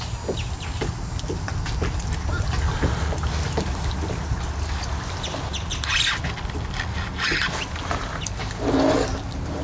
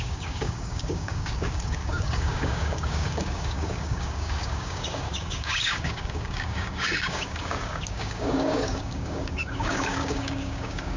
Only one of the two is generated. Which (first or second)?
second